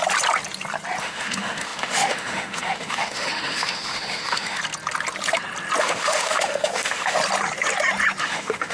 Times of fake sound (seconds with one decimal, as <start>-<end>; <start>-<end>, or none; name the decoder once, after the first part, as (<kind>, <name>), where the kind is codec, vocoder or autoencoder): 1.0-4.6 (autoencoder, DAC-VAE); 5.8-7.2; 8.2-8.7